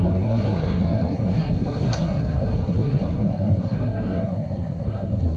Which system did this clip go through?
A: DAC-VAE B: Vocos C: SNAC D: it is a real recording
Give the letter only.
C